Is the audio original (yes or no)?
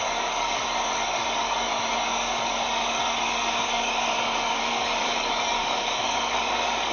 no